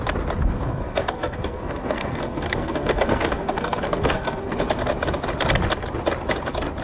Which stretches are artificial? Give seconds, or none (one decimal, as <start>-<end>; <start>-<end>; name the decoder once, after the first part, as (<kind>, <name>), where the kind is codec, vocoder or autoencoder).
0.4-4.5 (codec, SNAC)